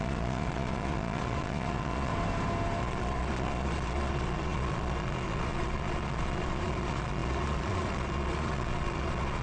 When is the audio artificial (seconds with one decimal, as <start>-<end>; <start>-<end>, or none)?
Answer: 0.0-2.1; 2.8-9.4